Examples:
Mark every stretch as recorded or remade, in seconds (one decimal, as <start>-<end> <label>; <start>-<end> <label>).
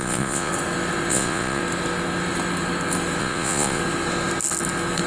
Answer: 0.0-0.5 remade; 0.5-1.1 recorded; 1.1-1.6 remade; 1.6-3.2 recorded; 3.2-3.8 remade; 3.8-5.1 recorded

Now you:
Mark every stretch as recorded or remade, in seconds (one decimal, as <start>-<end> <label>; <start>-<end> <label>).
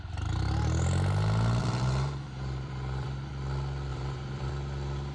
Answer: 0.0-1.6 recorded; 1.6-3.3 remade; 3.3-3.9 recorded; 3.9-4.5 remade; 4.5-5.1 recorded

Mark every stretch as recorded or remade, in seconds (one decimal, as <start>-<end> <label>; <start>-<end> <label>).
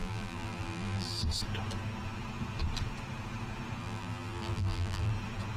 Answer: 0.0-1.2 remade; 1.2-3.8 recorded; 3.8-5.1 remade; 5.1-5.6 recorded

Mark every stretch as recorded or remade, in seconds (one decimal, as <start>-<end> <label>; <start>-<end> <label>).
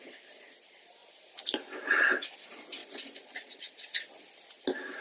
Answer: 0.0-2.8 recorded; 2.8-3.7 remade; 3.7-5.0 recorded